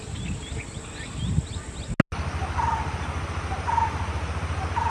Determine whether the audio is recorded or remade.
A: recorded